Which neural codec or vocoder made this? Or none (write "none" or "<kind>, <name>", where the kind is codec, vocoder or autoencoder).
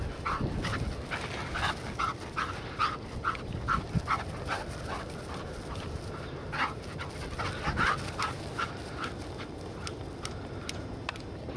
none